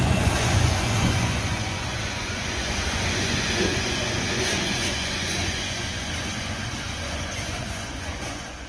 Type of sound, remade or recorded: remade